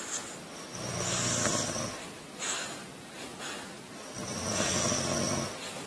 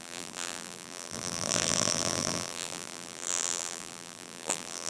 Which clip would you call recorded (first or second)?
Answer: first